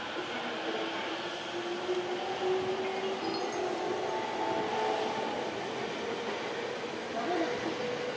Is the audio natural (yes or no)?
yes